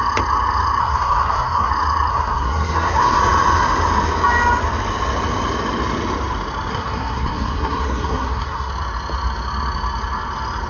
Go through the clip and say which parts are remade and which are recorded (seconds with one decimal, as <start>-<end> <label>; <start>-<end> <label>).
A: 0.0-0.8 recorded; 0.8-1.7 remade; 1.7-2.1 recorded; 2.1-3.2 remade; 3.2-6.7 recorded; 6.7-8.7 remade; 8.7-10.7 recorded